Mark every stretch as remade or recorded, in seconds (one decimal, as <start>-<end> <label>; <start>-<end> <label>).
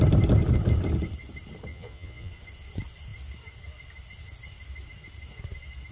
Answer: 0.0-1.7 recorded; 1.7-2.3 remade; 2.3-5.9 recorded